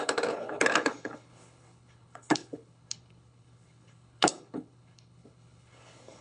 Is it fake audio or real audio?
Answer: fake